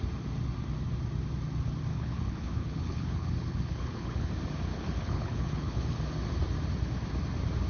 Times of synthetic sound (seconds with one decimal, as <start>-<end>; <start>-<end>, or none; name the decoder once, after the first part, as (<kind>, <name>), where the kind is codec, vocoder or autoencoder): 1.9-4.3 (codec, HILCodec); 4.7-6.0